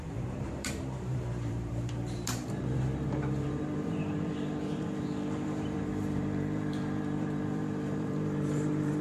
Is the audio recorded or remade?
remade